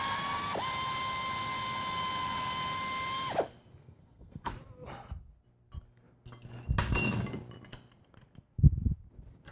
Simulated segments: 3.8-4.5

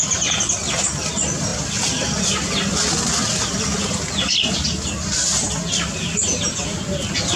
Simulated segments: none